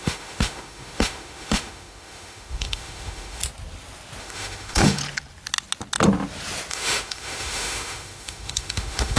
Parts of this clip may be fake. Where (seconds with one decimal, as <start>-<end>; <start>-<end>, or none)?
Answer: 0.0-3.4; 4.2-5.0; 6.7-9.2